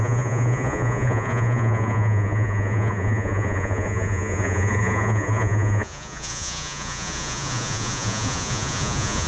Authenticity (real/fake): fake